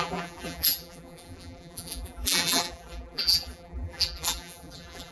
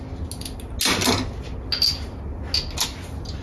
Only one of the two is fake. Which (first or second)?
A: first